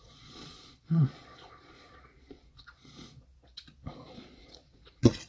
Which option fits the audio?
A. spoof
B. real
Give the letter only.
A